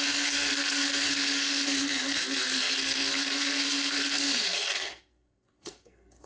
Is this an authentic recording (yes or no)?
no